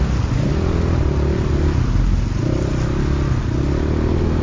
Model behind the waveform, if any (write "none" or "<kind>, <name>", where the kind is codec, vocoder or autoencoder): none